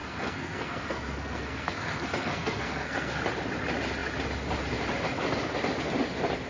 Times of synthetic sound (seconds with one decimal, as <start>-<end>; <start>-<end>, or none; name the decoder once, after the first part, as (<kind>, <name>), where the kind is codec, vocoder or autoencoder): 0.0-3.2 (codec, SNAC)